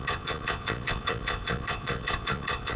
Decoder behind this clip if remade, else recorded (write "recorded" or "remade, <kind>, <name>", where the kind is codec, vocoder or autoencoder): remade, vocoder, Vocos